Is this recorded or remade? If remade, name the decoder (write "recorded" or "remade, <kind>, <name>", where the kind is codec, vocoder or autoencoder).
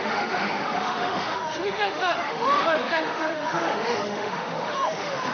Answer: remade, autoencoder, DAC-VAE